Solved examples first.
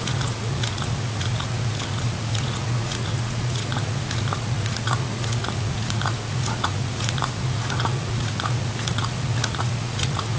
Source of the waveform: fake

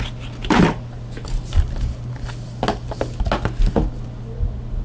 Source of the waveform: real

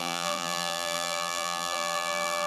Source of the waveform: fake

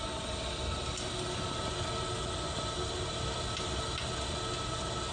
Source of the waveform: real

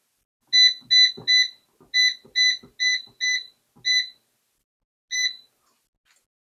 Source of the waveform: real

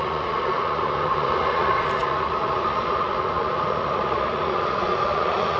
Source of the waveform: fake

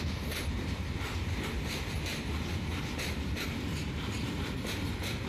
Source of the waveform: fake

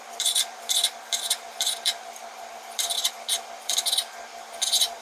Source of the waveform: fake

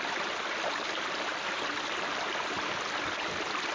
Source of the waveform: real